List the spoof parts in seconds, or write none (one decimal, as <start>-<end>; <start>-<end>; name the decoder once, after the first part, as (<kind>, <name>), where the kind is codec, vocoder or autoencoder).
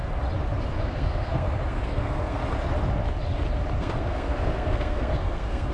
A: 0.8-2.4 (codec, SNAC); 3.8-5.7